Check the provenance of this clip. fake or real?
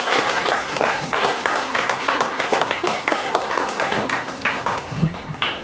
fake